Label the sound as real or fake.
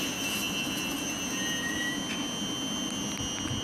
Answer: real